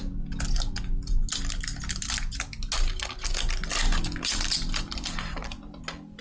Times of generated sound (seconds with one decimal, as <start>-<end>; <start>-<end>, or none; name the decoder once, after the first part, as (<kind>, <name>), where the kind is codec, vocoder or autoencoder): none